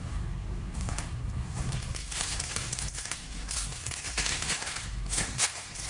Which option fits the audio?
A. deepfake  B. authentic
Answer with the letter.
A